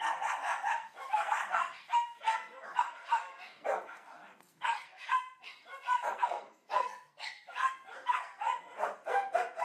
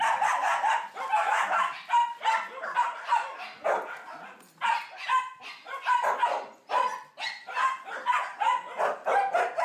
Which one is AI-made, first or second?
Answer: first